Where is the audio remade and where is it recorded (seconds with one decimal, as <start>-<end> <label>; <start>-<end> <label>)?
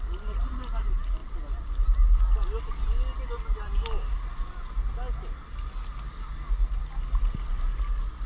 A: 0.0-8.3 recorded